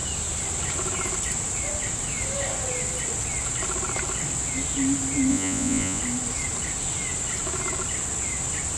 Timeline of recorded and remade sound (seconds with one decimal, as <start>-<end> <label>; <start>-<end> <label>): 0.0-5.3 recorded; 5.3-6.0 remade; 6.0-8.8 recorded